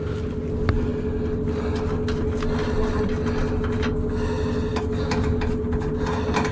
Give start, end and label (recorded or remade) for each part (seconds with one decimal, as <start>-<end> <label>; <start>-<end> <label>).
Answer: 0.0-6.5 recorded